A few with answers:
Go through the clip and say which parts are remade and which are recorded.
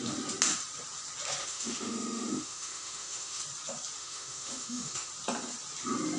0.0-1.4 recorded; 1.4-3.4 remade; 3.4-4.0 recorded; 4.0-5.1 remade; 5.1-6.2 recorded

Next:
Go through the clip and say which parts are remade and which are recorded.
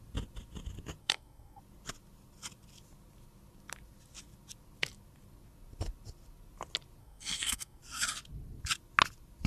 0.0-1.0 recorded; 1.0-1.6 remade; 1.6-7.0 recorded; 7.0-7.8 remade; 7.8-9.5 recorded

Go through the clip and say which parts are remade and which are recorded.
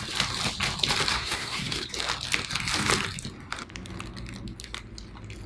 0.0-1.1 recorded; 1.1-1.9 remade; 1.9-5.5 recorded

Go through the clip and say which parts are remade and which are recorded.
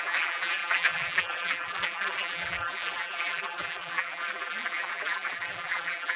0.0-6.2 remade